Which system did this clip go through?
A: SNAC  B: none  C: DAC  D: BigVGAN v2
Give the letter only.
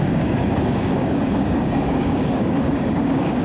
C